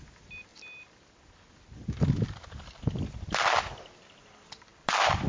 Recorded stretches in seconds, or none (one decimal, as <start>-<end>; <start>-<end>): 0.0-5.3